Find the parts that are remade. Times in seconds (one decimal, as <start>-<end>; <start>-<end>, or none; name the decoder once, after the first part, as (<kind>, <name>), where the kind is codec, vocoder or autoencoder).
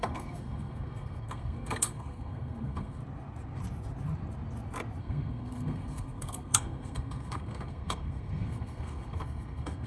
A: 0.0-3.0 (codec, SNAC); 5.0-9.9